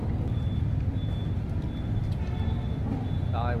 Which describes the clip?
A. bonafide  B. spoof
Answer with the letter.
A